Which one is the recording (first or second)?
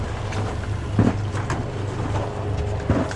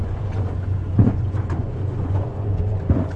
first